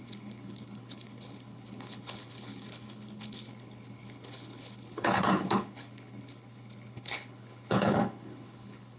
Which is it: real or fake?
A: fake